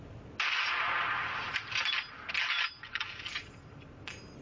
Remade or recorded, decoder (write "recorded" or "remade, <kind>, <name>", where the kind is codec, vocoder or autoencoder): recorded